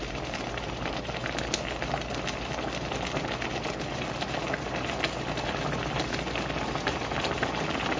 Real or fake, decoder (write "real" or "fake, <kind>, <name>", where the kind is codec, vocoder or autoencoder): real